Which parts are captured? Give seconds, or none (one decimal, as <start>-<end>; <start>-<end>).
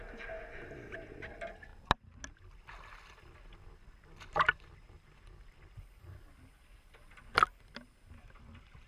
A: 0.0-8.9